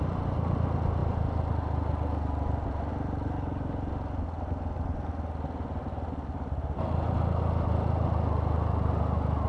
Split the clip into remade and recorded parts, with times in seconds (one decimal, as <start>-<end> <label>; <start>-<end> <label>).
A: 0.0-9.5 recorded

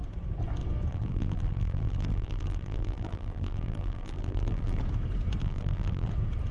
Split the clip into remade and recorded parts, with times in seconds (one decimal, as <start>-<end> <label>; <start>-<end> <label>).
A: 0.0-0.9 recorded; 0.9-4.8 remade; 4.8-5.4 recorded; 5.4-6.1 remade; 6.1-6.5 recorded

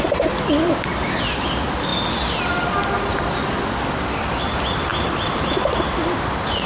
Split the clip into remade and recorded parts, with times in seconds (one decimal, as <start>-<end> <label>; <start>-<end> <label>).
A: 0.0-4.9 recorded; 4.9-6.1 remade; 6.1-6.7 recorded

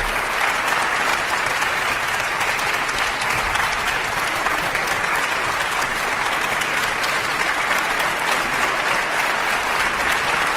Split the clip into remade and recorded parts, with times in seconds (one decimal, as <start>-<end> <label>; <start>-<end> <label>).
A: 0.0-10.6 recorded

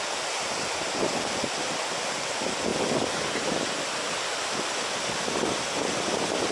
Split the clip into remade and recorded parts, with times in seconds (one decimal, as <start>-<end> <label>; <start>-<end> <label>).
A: 0.0-6.5 recorded

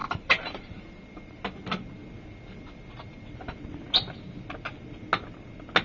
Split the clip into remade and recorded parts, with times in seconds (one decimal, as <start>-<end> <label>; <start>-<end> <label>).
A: 0.0-0.8 remade; 0.8-5.8 recorded